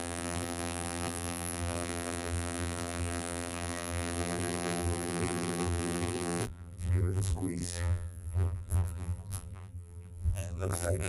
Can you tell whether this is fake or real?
fake